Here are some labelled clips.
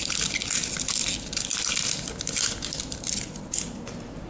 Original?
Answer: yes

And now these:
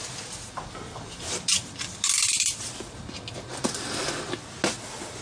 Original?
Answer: yes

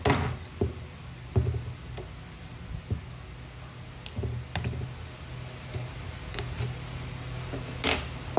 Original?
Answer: yes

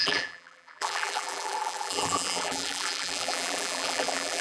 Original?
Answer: no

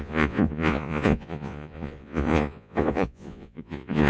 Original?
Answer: no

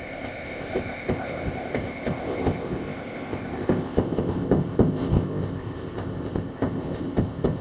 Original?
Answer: no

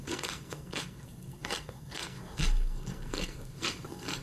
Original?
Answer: no